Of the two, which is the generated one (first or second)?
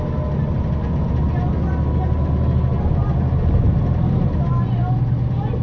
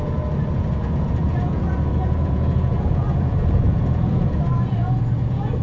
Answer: second